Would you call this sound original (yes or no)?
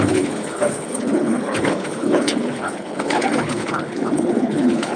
no